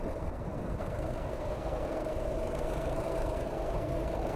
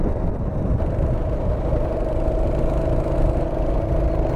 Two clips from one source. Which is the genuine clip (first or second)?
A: second